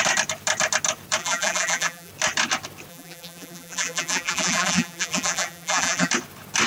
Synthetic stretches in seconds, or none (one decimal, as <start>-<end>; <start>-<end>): 1.2-2.1; 2.9-6.1